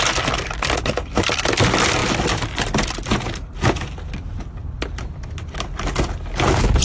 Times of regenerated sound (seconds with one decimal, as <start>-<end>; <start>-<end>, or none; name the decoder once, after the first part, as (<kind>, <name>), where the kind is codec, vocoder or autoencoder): none